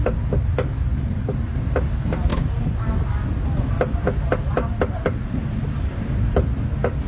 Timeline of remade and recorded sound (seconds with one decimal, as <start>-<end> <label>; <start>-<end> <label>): 0.0-0.9 recorded; 0.9-1.7 remade; 1.7-7.1 recorded